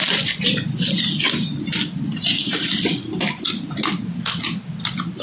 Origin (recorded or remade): recorded